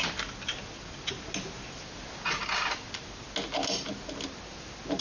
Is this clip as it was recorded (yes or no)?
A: yes